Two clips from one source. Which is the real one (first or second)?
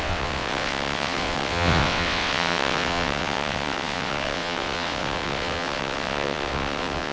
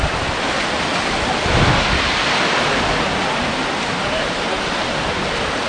second